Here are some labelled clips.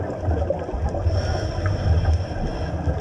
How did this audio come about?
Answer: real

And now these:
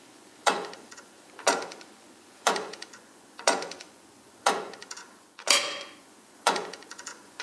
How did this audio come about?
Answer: fake